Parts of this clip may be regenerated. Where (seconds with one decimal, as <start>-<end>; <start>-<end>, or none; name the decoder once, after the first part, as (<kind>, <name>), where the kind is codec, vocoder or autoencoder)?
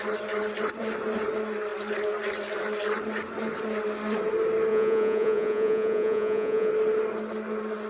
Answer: 4.7-6.7 (vocoder, Vocos)